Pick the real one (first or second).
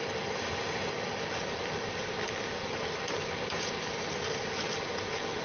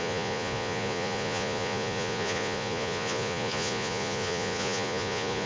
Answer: first